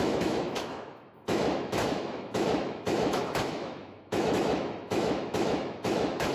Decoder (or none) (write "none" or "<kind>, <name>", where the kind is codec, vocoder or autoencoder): autoencoder, DAC-VAE